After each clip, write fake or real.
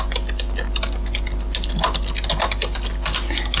real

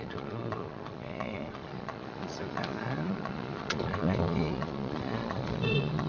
fake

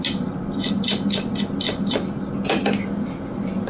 real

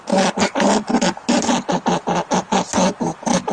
real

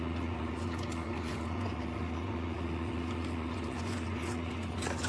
fake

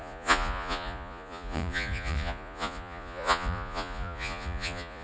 fake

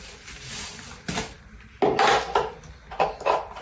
real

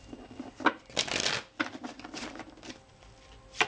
real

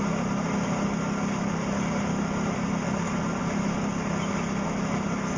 real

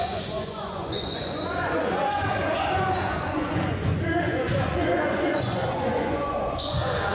fake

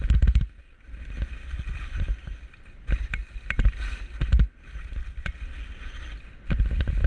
real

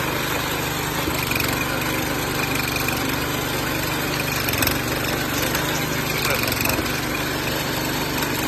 real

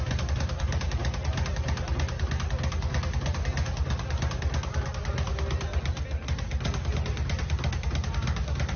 real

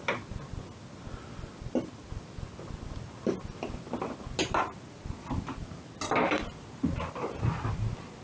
real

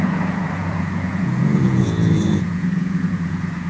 fake